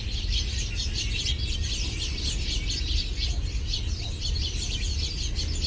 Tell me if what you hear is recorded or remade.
recorded